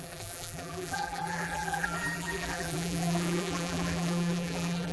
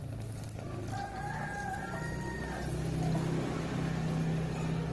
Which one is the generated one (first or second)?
first